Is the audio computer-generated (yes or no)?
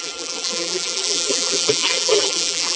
yes